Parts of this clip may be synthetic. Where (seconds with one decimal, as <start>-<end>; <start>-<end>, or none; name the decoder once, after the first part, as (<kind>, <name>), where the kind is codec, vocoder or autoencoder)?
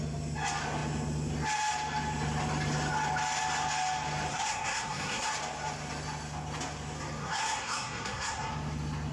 4.3-5.3 (codec, SNAC); 7.2-8.5